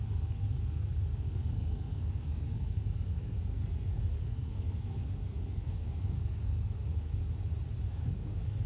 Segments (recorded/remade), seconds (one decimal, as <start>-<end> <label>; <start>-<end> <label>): 0.0-7.2 remade; 7.2-7.9 recorded; 7.9-8.7 remade